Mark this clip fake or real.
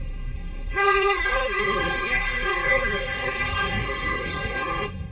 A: fake